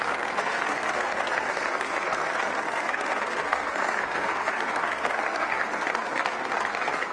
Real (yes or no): no